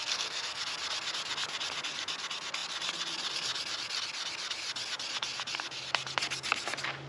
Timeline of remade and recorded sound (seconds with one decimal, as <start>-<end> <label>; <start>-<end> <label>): 0.0-0.6 remade; 0.6-7.1 recorded